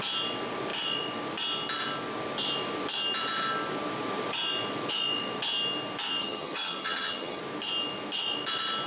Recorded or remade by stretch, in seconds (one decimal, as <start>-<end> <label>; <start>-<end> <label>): 0.0-6.2 recorded; 6.2-7.4 remade; 7.4-8.9 recorded